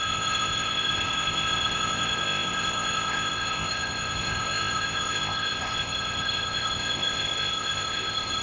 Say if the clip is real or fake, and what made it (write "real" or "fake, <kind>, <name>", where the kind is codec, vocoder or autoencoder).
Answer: fake, codec, ZipCodec